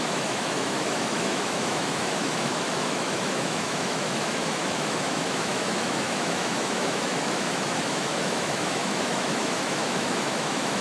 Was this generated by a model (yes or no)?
yes